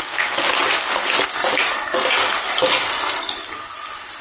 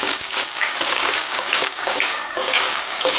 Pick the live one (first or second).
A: first